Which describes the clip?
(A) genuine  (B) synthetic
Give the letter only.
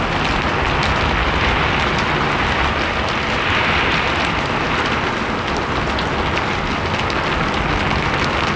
A